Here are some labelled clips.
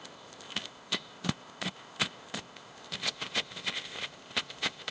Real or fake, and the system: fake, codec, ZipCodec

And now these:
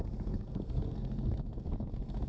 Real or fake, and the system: fake, codec, SNAC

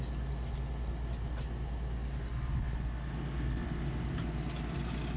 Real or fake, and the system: real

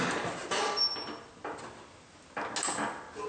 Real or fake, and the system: real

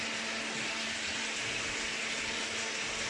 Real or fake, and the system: real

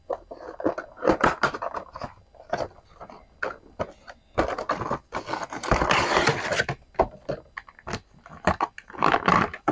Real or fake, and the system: real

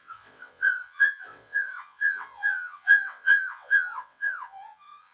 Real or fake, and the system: fake, vocoder, WaveNeXt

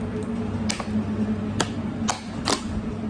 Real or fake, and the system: real